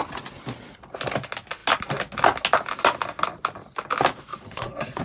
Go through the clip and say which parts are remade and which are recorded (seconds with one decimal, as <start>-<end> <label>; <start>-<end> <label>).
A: 0.0-4.3 recorded; 4.3-5.0 remade